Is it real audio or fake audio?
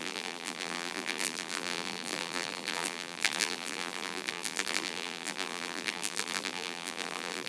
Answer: fake